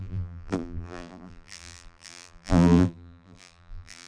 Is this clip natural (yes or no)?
no